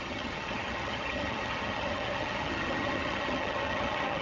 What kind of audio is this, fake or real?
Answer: fake